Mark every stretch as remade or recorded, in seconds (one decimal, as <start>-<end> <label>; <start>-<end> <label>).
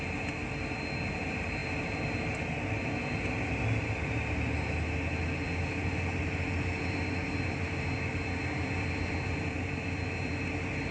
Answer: 0.0-10.9 recorded